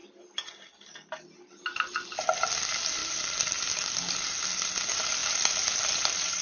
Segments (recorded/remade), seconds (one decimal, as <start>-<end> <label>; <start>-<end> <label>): 0.0-3.0 recorded; 3.0-3.7 remade; 3.7-5.2 recorded; 5.2-5.7 remade; 5.7-6.4 recorded